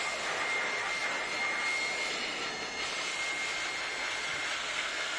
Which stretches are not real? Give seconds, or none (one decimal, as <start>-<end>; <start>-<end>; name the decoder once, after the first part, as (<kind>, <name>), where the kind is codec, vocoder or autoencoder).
4.6-5.2 (codec, SNAC)